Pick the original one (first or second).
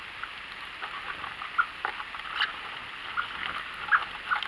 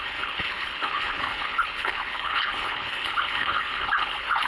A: first